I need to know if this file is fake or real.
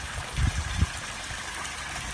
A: real